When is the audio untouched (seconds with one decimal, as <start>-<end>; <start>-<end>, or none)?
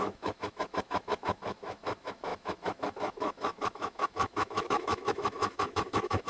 none